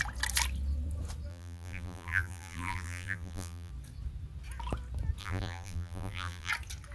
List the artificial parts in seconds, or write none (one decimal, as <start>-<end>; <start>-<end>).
1.3-3.7; 5.2-6.5